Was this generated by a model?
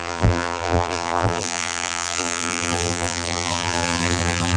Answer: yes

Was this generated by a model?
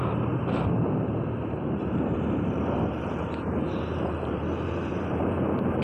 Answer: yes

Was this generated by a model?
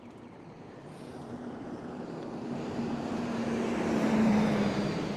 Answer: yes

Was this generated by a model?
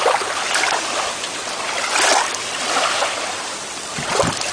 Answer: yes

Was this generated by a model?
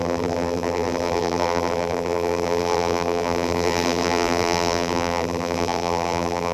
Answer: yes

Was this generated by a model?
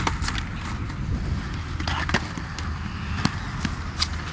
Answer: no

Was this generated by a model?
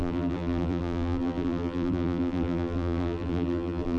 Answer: yes